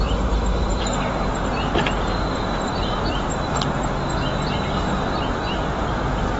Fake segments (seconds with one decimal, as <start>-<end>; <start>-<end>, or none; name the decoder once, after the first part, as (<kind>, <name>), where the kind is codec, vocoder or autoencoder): none